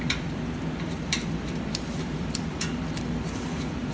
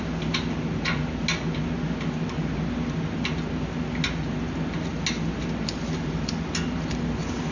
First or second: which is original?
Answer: second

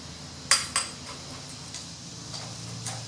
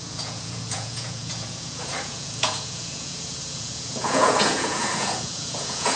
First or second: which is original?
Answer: first